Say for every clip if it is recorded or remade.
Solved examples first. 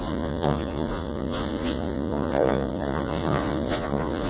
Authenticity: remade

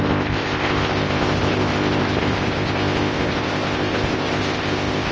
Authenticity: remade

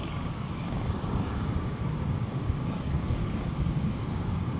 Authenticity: remade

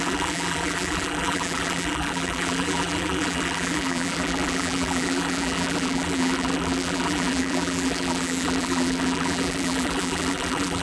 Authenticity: remade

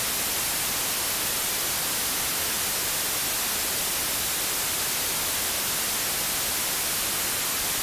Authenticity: recorded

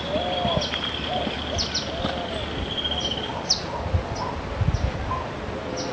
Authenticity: recorded